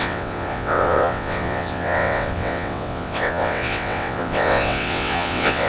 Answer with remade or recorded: remade